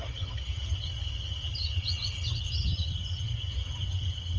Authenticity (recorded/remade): remade